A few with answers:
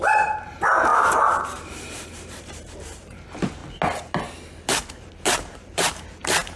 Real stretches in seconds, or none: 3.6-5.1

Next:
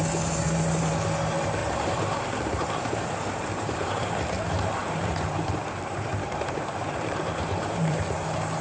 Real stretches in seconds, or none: 0.0-1.6; 3.9-4.8; 8.0-8.6

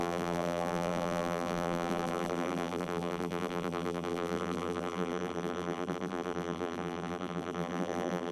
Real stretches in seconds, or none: none